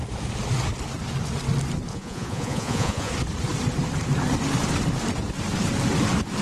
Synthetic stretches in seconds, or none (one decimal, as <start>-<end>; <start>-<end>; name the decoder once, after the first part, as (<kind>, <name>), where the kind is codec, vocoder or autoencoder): 1.9-3.1 (vocoder, Vocos)